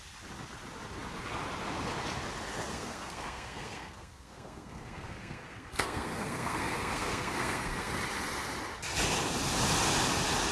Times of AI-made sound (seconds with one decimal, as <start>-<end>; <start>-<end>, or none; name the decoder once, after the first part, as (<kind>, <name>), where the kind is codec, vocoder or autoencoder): 2.7-7.9 (codec, SNAC)